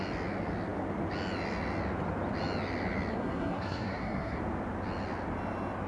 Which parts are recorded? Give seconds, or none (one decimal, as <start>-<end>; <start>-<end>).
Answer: 0.0-3.1; 4.4-5.9